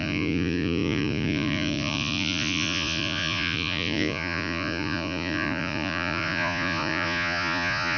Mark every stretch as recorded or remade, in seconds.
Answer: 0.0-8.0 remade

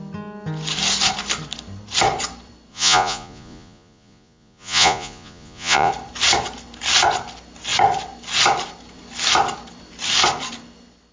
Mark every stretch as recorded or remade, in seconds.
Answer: 0.0-2.7 recorded; 2.7-5.9 remade; 5.9-11.1 recorded

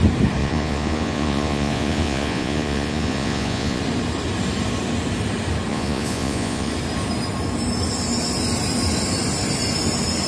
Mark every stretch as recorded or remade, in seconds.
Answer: 0.0-0.4 recorded; 0.4-3.8 remade; 3.8-5.7 recorded; 5.7-6.7 remade; 6.7-10.3 recorded

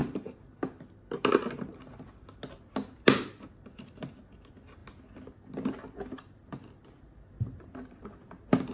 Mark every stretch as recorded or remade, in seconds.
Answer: 0.0-8.7 recorded

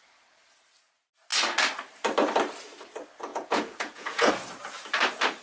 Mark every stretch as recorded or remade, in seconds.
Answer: 0.0-3.3 recorded; 3.3-4.3 remade; 4.3-5.4 recorded